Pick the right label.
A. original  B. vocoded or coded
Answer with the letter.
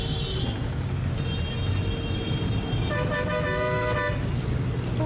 A